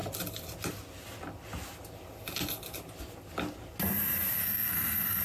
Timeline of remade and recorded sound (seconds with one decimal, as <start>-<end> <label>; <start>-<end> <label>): 0.0-4.4 recorded; 4.4-5.2 remade